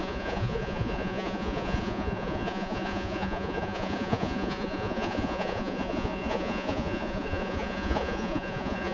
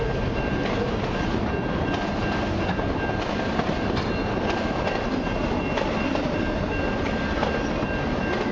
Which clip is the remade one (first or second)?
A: first